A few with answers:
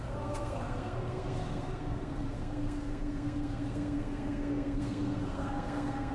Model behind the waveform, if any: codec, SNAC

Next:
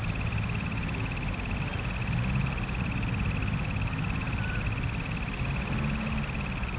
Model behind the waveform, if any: none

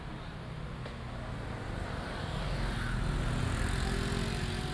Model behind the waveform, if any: none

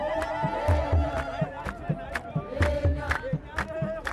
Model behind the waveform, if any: none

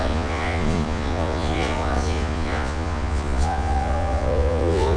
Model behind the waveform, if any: vocoder, Vocos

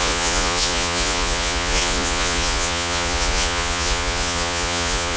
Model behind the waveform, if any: vocoder, Vocos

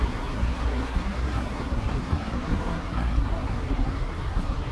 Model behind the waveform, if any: codec, SNAC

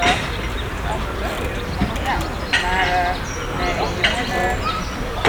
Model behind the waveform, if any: none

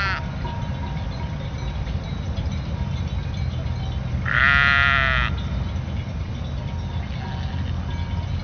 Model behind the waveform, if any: none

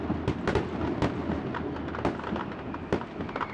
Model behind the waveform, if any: none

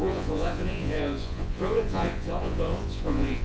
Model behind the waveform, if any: vocoder, Vocos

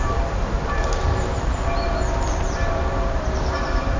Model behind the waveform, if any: vocoder, BigVGAN v2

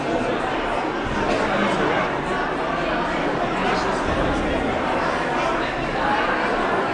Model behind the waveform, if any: none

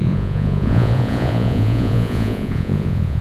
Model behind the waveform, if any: vocoder, Vocos